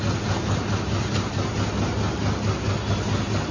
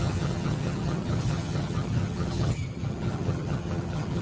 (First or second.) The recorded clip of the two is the first